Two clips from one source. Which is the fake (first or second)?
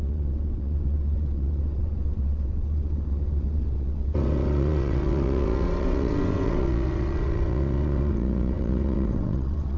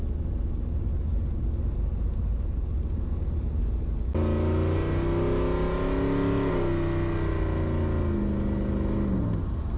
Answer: first